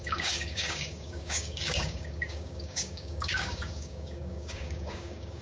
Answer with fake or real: fake